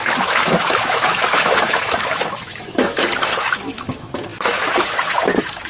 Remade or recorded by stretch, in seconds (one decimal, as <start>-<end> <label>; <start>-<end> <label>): 0.0-5.7 remade